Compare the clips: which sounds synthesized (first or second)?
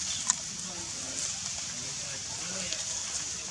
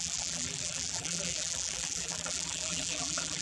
second